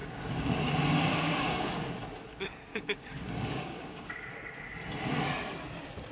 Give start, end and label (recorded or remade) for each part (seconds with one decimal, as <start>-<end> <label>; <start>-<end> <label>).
0.0-0.7 remade; 0.7-1.1 recorded; 1.1-1.8 remade; 1.8-2.7 recorded; 2.7-4.1 remade; 4.1-6.1 recorded